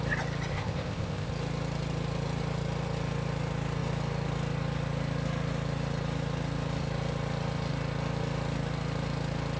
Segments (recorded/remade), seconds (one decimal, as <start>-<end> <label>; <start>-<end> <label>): 0.0-0.5 recorded; 0.5-1.3 remade; 1.3-9.6 recorded